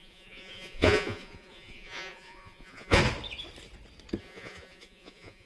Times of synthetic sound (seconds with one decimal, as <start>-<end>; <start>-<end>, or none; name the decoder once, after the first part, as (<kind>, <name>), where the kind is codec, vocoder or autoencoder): 0.0-3.0 (vocoder, Vocos); 4.2-5.5